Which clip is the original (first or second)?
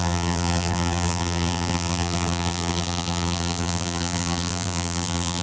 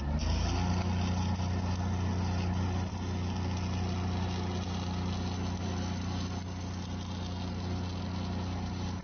second